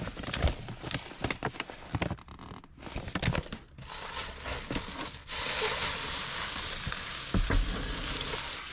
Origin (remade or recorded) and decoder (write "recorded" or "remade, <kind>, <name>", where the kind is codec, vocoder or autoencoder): recorded